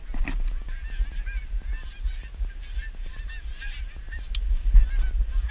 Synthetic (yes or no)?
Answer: no